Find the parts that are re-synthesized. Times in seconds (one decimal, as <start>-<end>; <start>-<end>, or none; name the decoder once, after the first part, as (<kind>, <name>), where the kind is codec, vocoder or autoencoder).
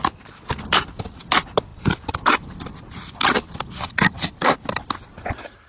none